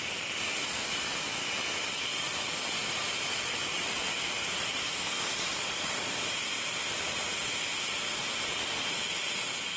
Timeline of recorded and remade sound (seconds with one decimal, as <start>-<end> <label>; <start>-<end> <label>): 0.0-9.8 recorded